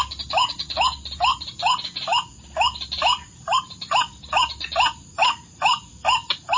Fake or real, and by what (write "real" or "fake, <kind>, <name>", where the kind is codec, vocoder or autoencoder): real